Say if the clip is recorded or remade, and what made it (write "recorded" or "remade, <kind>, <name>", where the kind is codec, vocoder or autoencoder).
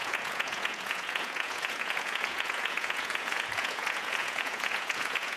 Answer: remade, vocoder, Vocos